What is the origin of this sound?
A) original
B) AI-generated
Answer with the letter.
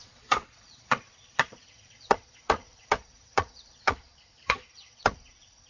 B